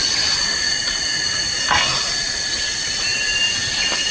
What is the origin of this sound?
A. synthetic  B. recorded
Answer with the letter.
B